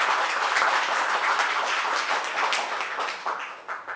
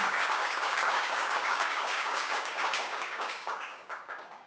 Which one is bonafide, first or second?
first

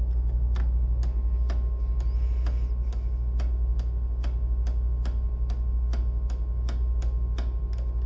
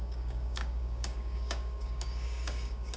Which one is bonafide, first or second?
first